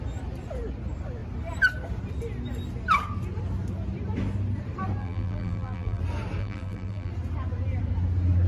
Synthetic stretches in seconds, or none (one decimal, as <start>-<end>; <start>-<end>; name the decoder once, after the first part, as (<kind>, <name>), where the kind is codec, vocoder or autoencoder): 5.0-6.0 (vocoder, BigVGAN v2); 6.4-7.1